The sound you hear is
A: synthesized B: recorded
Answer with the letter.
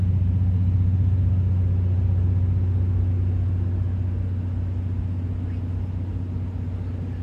B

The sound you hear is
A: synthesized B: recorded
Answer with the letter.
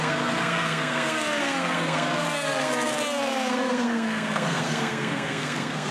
A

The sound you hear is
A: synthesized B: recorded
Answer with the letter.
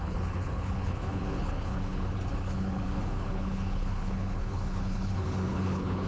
A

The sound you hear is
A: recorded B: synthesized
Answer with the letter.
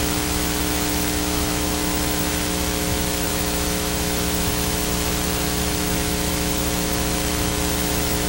B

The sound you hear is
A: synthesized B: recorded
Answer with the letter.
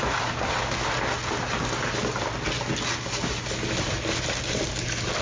B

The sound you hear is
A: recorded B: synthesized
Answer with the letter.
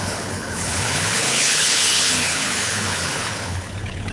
B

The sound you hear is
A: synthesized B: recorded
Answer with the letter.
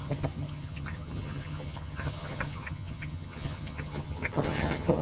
A